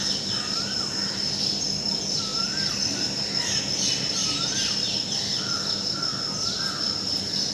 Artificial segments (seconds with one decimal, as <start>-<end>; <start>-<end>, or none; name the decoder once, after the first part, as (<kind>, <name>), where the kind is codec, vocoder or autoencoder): 4.2-4.9 (vocoder, BigVGAN v2)